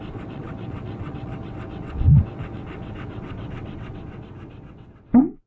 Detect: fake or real fake